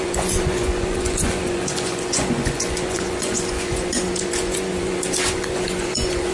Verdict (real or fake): fake